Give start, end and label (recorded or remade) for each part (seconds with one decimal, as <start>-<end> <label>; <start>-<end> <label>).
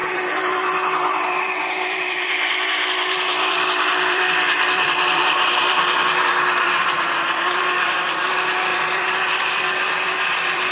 0.0-10.7 remade